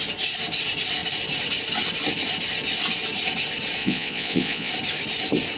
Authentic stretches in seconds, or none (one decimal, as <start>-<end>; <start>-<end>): 0.0-3.8; 4.7-5.6